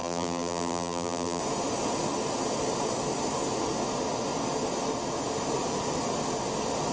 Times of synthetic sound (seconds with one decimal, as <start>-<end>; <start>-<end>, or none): 0.0-1.4